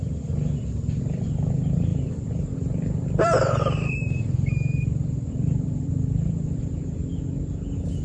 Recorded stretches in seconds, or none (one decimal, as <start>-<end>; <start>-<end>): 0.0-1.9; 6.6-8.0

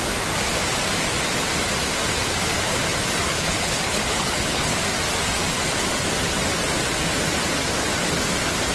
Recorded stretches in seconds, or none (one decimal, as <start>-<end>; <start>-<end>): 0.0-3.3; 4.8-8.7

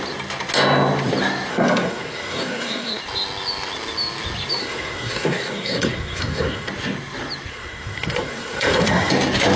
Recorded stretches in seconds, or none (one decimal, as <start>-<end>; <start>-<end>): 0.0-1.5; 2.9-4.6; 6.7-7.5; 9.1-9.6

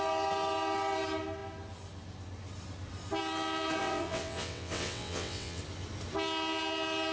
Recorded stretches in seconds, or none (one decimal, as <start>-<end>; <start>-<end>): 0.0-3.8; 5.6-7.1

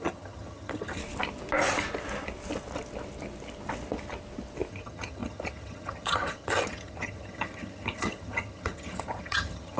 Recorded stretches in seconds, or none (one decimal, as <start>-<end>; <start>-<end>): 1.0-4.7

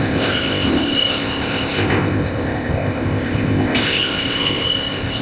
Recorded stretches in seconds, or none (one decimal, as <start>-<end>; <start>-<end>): none

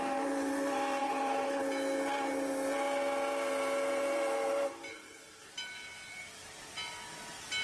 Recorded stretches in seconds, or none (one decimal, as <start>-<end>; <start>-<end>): 0.0-1.0; 1.6-4.9; 5.5-7.6

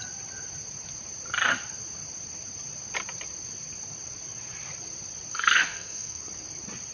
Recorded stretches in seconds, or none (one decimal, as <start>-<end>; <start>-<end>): 0.0-5.3; 6.2-6.9